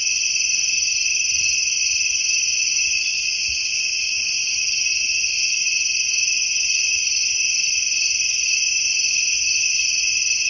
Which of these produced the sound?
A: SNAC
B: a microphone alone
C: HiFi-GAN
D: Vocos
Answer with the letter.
B